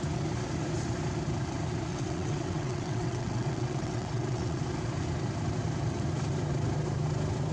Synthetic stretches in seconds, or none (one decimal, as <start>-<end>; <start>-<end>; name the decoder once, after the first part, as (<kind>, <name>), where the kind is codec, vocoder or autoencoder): 1.9-4.6 (vocoder, WaveNeXt)